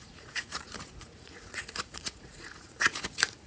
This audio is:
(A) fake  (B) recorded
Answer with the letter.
A